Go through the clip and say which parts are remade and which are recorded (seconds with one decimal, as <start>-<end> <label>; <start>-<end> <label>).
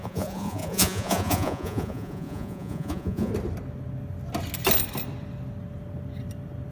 0.0-3.3 remade; 3.3-6.7 recorded